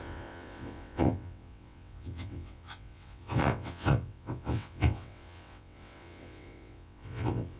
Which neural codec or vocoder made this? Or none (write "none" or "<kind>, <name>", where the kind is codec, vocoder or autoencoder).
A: vocoder, WaveNeXt